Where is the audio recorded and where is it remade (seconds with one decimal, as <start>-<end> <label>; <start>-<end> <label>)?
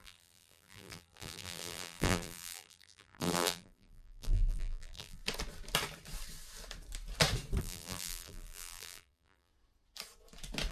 0.0-5.2 remade; 5.2-7.6 recorded; 7.6-9.5 remade; 9.5-10.7 recorded